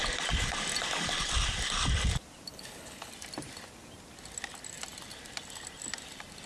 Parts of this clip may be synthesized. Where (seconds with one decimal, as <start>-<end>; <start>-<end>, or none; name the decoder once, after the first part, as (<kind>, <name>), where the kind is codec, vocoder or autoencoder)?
2.5-3.1 (codec, HILCodec)